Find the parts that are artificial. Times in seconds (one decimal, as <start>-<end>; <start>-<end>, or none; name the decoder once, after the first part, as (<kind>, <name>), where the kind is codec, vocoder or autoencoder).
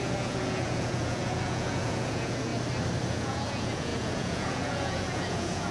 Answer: 0.0-2.5 (vocoder, Vocos); 3.1-5.7